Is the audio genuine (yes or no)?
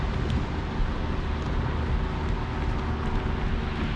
yes